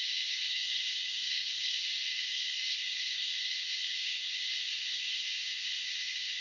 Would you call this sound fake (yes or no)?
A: yes